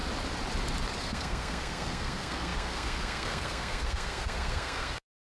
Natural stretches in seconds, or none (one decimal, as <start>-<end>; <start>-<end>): 0.0-1.0